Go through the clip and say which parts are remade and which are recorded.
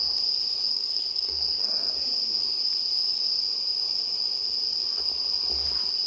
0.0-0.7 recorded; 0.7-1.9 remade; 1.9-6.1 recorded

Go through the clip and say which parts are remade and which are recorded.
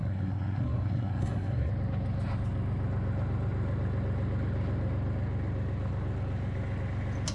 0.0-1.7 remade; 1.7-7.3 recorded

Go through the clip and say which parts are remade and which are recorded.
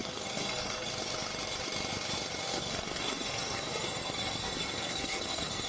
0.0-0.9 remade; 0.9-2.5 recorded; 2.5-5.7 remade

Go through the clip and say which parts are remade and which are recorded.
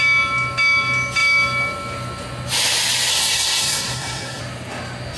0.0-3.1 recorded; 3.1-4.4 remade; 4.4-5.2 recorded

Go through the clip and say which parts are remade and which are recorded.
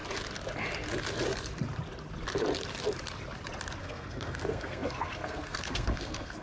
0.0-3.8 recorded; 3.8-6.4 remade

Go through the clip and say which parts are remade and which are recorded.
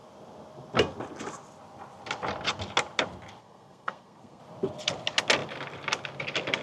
0.0-3.4 recorded; 3.4-4.4 remade; 4.4-6.6 recorded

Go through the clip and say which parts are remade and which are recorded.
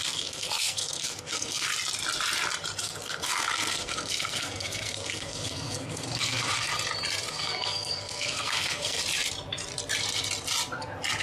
0.0-1.7 remade; 1.7-2.8 recorded; 2.8-6.7 remade; 6.7-7.3 recorded; 7.3-9.0 remade; 9.0-11.2 recorded